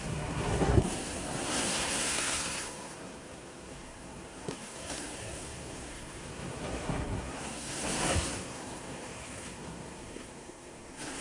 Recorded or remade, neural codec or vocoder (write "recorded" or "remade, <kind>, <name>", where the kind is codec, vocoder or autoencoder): remade, codec, SNAC